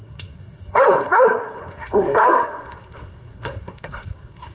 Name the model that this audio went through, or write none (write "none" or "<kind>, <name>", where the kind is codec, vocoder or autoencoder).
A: codec, SNAC